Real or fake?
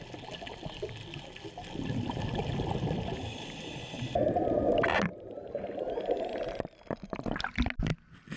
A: real